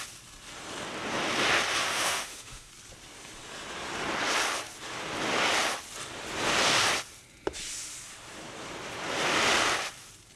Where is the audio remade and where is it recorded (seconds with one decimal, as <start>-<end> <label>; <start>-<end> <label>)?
0.0-1.8 recorded; 1.8-2.7 remade; 2.7-10.4 recorded